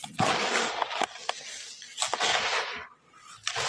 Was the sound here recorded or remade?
recorded